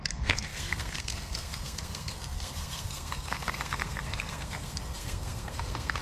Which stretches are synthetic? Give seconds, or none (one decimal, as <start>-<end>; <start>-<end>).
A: 0.0-6.0